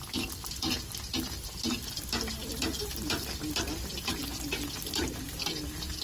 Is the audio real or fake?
real